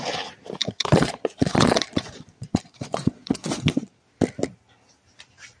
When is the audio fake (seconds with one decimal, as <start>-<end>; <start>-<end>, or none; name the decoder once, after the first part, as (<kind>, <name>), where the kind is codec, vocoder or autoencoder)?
0.6-4.0 (vocoder, Vocos)